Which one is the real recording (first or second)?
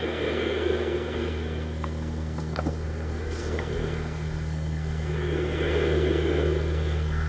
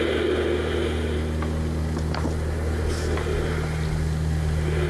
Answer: second